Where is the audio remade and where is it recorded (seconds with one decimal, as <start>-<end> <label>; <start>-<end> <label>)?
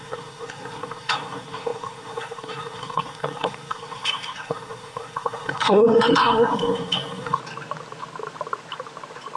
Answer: 0.0-7.4 remade; 7.4-9.4 recorded